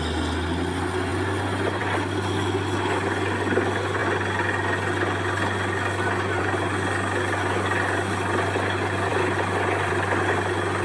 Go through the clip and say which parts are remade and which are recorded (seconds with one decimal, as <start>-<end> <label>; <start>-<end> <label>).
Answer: 0.0-10.8 recorded

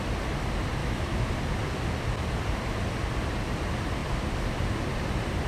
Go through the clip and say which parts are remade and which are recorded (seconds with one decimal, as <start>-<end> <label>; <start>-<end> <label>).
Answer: 0.0-0.8 recorded; 0.8-1.3 remade; 1.3-5.5 recorded

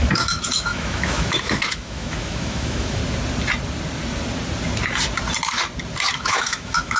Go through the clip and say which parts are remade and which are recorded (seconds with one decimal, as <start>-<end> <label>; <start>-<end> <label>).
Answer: 0.0-3.0 remade; 3.0-6.1 recorded; 6.1-7.0 remade

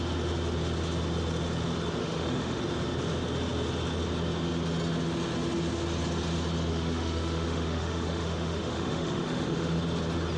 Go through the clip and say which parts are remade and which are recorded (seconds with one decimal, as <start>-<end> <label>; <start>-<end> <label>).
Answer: 0.0-2.0 recorded; 2.0-2.6 remade; 2.6-6.7 recorded; 6.7-9.8 remade; 9.8-10.4 recorded